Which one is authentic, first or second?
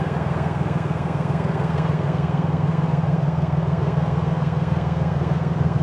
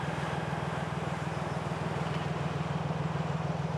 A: second